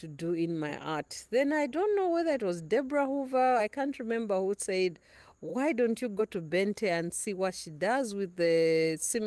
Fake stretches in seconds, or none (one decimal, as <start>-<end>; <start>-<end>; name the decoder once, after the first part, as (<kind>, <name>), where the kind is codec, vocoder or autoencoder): 0.0-0.7 (autoencoder, DAC-VAE); 3.6-9.3